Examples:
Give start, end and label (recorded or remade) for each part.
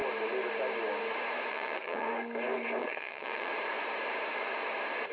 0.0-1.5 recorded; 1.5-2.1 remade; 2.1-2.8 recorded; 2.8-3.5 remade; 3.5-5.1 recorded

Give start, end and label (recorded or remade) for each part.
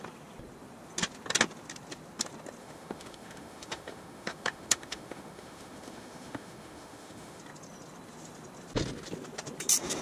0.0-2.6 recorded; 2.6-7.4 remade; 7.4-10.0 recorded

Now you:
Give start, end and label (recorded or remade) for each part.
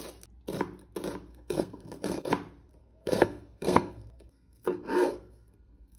0.0-1.3 recorded; 1.3-2.3 remade; 2.3-2.8 recorded; 2.8-6.0 remade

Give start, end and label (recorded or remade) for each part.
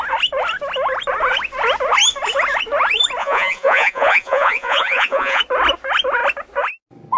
0.0-3.2 recorded; 3.2-5.4 remade; 5.4-7.2 recorded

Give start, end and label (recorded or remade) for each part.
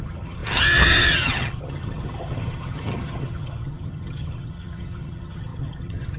0.0-6.2 remade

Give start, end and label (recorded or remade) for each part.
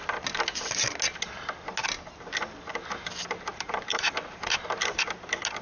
0.0-3.5 recorded; 3.5-4.6 remade; 4.6-5.6 recorded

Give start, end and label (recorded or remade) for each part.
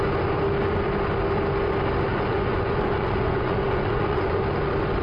0.0-2.1 recorded; 2.1-4.4 remade; 4.4-5.0 recorded